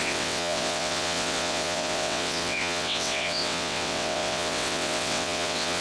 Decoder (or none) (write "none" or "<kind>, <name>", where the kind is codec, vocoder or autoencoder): vocoder, WaveNeXt